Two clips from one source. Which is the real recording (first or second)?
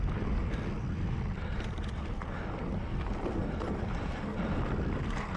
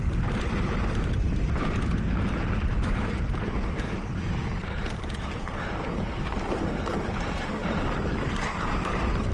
first